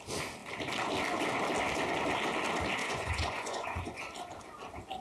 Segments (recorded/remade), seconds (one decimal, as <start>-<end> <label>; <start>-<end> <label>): 0.0-2.8 recorded; 2.8-4.0 remade; 4.0-5.0 recorded